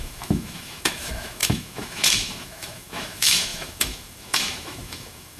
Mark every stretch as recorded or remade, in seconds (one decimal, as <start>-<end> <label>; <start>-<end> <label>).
0.0-5.4 remade